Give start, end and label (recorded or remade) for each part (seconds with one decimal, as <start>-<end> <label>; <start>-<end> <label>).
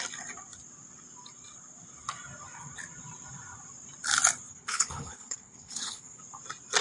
0.0-4.5 recorded; 4.5-6.2 remade; 6.2-6.8 recorded